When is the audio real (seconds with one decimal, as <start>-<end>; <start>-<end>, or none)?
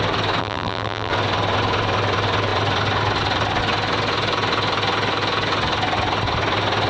0.0-0.4; 1.1-6.9